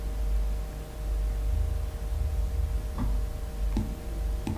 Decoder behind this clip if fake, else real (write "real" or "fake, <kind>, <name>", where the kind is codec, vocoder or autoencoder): real